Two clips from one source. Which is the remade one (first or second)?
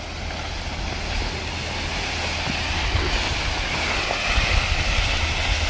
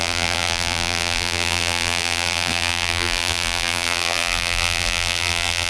second